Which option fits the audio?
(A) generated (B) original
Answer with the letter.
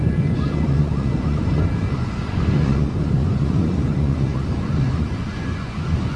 A